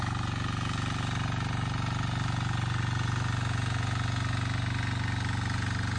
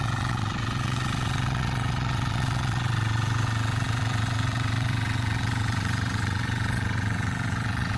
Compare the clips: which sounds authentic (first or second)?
first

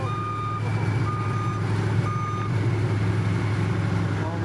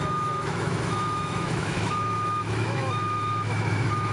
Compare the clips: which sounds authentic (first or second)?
first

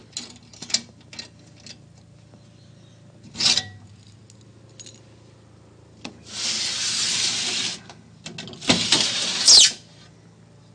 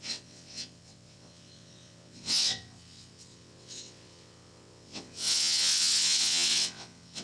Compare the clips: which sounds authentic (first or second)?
first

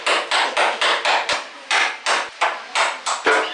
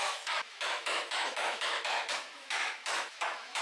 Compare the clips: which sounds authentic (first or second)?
first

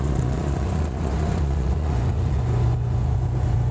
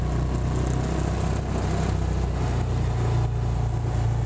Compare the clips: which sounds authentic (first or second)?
second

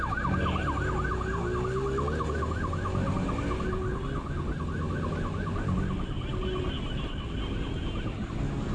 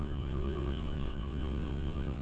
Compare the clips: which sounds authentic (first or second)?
first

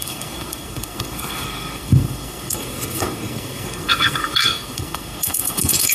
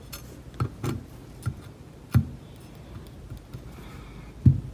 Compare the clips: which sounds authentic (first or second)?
second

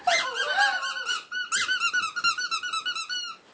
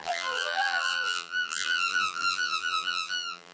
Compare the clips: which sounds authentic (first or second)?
first